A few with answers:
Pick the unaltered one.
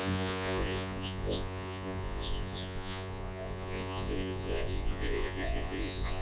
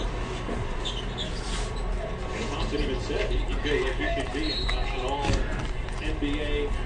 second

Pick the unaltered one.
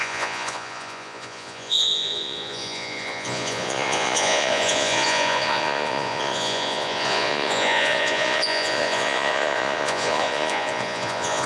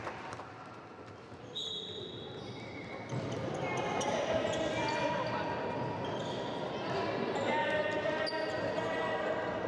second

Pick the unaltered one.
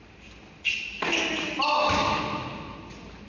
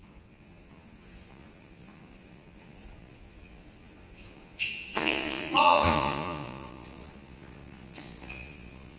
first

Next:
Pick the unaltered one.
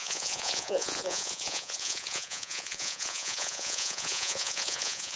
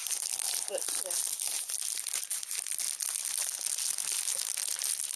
second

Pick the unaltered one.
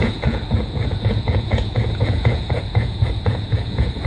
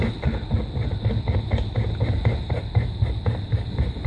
second